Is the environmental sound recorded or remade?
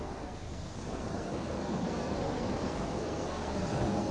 remade